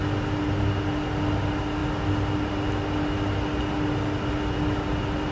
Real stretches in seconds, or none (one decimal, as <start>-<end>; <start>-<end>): 0.0-5.3